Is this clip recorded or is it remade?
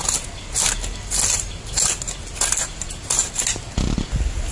recorded